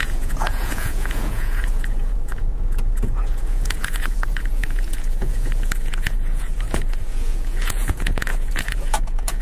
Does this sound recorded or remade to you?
remade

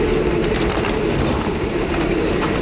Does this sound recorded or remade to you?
remade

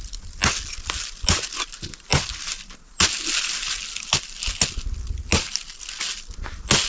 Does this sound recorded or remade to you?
recorded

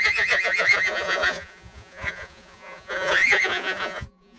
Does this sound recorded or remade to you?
remade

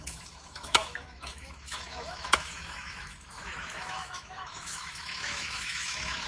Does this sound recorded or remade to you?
remade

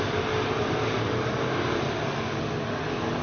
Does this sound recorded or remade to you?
recorded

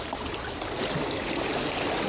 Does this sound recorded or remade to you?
recorded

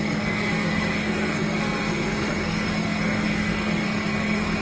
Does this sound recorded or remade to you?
remade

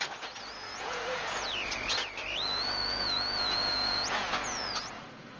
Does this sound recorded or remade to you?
remade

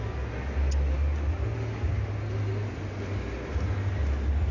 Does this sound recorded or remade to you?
recorded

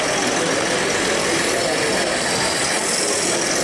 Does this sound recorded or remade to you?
recorded